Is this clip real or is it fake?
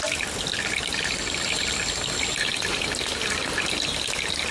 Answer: real